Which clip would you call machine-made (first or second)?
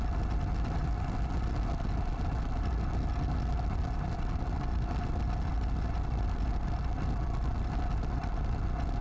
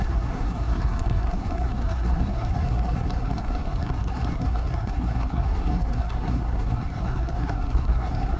second